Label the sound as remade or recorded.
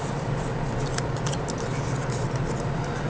recorded